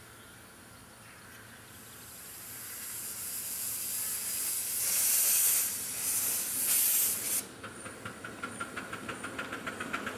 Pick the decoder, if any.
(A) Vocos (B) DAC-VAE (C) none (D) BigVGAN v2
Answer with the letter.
C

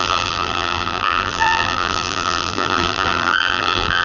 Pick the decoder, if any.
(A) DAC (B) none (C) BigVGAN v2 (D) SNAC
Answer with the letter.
C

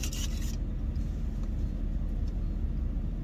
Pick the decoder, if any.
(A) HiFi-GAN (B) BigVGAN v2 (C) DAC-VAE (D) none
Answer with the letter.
D